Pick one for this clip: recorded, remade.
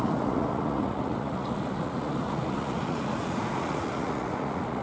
remade